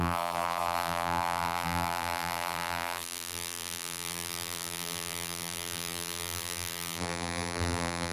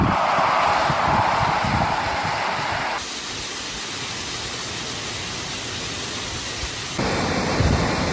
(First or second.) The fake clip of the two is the first